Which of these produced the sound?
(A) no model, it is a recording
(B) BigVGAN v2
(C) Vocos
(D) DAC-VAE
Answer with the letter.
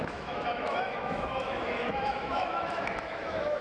D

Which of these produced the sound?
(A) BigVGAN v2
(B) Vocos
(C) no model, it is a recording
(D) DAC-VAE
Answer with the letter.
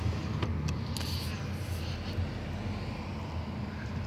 C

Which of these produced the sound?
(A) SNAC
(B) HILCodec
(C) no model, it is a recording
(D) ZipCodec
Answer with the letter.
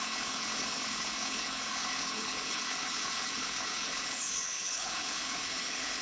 B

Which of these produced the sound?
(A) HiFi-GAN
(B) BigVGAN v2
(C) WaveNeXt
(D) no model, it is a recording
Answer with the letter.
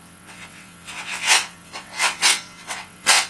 C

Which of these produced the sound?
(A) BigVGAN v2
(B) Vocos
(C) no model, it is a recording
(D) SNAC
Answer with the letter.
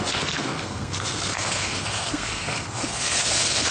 D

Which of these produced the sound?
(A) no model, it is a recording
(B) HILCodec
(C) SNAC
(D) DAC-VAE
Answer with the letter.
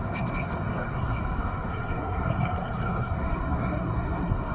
C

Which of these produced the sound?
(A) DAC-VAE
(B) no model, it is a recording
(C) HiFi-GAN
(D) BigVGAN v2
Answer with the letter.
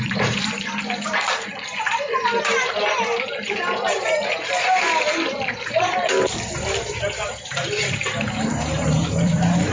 D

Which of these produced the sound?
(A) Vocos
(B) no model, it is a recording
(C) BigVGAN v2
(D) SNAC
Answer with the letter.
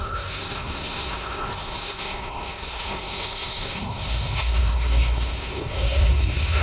D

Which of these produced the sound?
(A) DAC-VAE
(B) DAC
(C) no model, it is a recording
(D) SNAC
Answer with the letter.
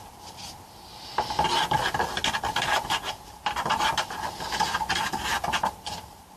C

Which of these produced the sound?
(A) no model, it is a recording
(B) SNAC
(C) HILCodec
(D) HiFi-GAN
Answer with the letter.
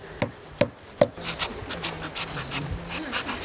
A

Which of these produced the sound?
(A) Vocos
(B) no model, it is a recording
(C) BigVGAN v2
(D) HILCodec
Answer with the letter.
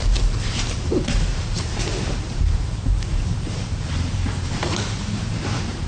C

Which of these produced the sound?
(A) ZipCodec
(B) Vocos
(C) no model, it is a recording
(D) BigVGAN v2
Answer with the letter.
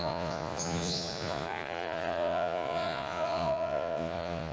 B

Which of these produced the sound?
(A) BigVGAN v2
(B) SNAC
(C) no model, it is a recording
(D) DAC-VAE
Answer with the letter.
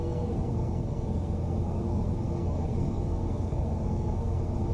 B